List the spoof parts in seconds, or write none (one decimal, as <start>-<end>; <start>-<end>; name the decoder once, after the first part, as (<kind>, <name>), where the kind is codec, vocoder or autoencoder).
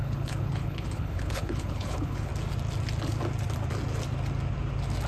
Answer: 0.0-2.3 (codec, HILCodec)